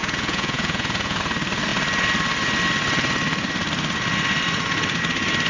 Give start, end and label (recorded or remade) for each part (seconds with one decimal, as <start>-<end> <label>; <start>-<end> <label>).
0.0-1.2 remade; 1.2-5.5 recorded